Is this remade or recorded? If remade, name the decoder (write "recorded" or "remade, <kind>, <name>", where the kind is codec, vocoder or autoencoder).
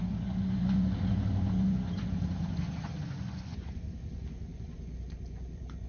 remade, vocoder, Vocos